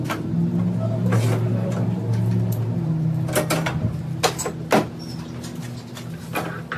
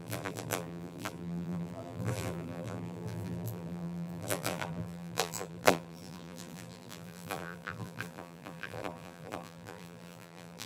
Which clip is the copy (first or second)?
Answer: second